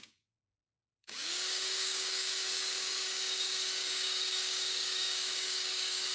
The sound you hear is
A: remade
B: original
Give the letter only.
A